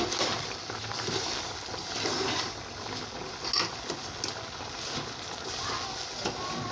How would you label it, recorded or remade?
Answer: recorded